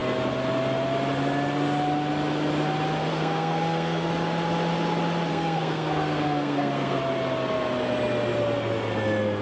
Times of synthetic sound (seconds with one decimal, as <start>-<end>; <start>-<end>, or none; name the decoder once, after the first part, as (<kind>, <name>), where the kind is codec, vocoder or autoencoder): 3.1-4.1 (codec, SNAC); 5.3-7.0